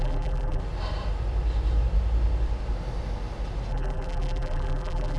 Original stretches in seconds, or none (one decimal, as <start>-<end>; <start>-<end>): 0.6-3.7